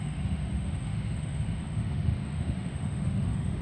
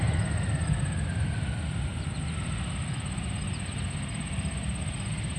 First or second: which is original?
second